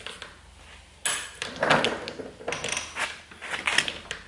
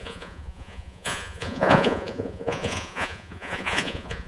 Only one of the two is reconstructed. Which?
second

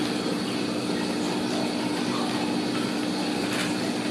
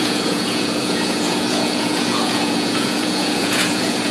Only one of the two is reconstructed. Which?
second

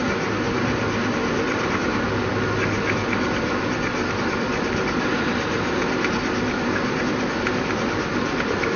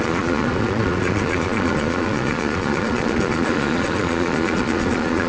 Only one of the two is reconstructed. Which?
second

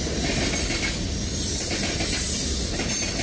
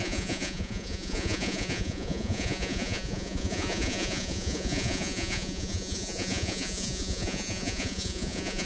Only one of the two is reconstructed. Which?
second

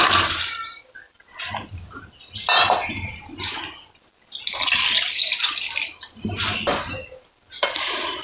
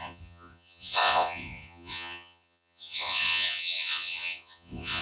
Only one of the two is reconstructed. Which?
second